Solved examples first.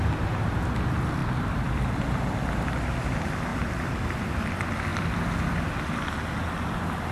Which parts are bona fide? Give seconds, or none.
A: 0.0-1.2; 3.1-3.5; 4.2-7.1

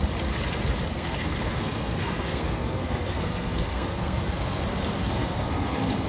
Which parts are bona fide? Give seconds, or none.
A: 0.0-0.9; 4.6-5.0